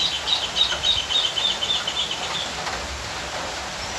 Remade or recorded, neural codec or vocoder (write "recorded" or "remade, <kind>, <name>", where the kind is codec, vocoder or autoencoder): recorded